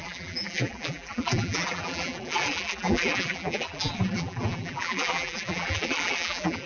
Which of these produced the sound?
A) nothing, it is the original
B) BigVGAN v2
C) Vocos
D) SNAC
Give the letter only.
B